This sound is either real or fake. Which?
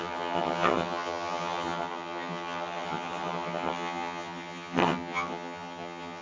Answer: fake